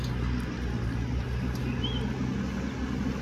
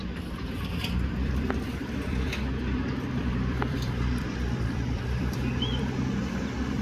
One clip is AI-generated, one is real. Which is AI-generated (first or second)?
second